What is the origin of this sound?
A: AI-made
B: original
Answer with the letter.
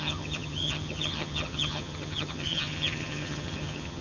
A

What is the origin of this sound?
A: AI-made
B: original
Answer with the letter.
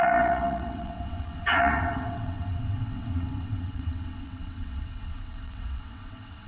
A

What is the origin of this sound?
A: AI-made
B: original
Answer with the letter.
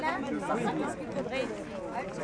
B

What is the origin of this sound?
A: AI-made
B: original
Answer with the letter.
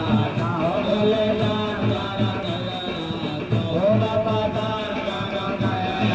B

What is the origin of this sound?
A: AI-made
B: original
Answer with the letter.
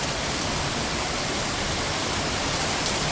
B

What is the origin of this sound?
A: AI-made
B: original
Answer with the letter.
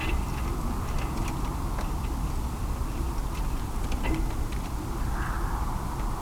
B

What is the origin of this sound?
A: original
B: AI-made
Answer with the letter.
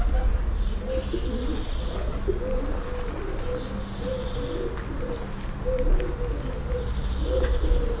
A